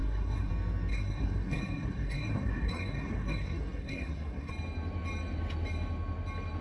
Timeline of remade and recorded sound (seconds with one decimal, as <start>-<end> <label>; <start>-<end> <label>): 0.0-0.5 remade; 0.5-0.9 recorded; 0.9-4.5 remade; 4.5-6.6 recorded